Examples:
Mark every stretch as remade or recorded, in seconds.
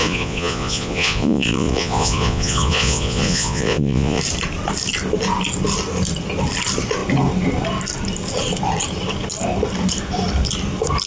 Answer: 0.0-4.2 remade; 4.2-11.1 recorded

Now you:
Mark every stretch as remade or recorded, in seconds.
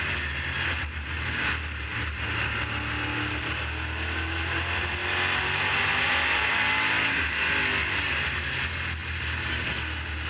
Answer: 0.0-10.3 recorded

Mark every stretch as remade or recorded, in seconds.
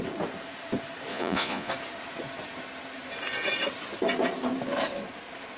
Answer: 0.0-1.1 recorded; 1.1-1.7 remade; 1.7-5.6 recorded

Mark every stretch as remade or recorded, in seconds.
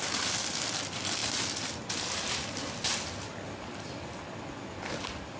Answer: 0.0-5.4 recorded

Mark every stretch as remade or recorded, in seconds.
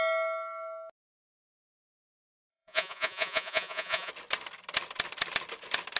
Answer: 0.0-2.5 recorded; 2.5-4.1 remade; 4.1-6.0 recorded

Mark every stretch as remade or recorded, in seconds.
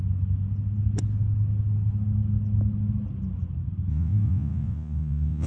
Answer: 0.0-3.9 recorded; 3.9-5.5 remade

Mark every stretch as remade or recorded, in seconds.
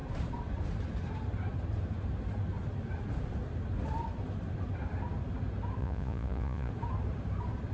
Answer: 0.0-5.8 recorded; 5.8-6.7 remade; 6.7-7.7 recorded